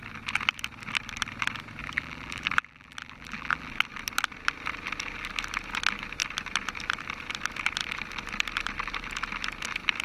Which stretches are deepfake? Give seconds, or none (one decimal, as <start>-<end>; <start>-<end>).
1.8-3.7